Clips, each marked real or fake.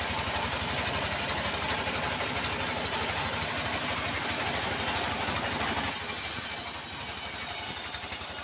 real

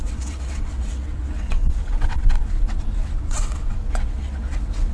fake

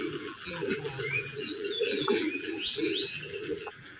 fake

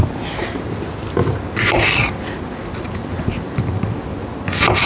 real